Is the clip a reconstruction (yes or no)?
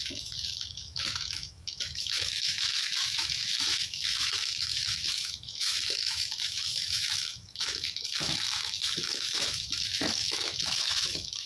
yes